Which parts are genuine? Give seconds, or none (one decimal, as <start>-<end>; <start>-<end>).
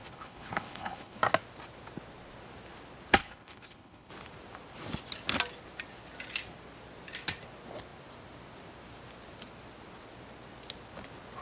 1.2-3.2; 4.1-11.4